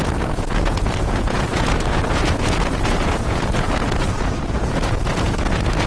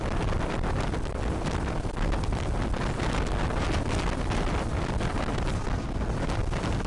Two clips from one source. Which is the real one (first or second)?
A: second